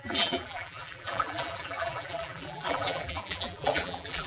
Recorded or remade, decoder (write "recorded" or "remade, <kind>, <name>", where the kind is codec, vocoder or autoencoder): remade, vocoder, BigVGAN v2